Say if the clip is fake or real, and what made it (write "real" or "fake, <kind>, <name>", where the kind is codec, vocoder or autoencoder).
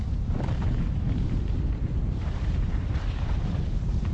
fake, vocoder, BigVGAN v2